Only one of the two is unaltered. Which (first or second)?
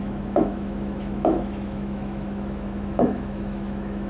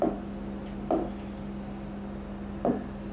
second